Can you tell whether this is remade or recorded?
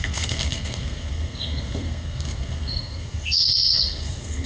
remade